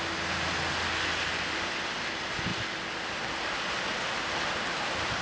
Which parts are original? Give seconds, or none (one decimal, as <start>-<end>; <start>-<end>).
0.0-5.2